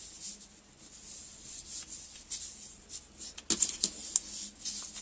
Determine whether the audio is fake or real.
real